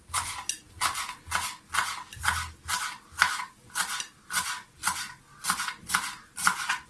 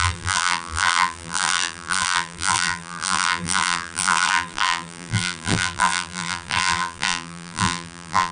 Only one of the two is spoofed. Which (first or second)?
second